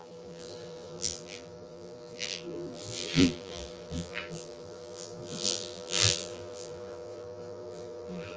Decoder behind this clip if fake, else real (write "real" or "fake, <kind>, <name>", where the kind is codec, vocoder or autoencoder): fake, vocoder, BigVGAN v2